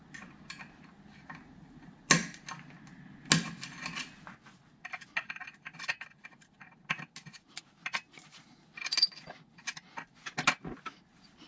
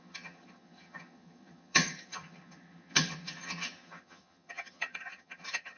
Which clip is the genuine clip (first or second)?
first